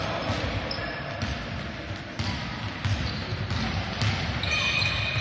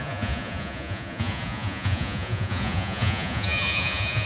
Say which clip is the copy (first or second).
second